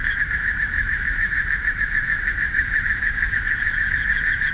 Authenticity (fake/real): fake